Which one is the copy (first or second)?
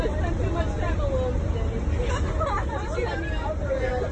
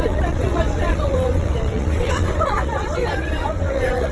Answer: second